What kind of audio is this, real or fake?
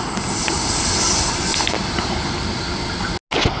real